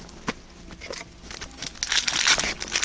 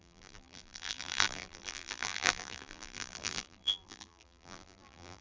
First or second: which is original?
first